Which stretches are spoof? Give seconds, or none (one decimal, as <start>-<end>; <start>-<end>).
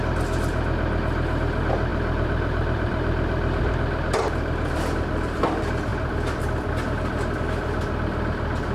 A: 1.9-5.4; 5.9-6.7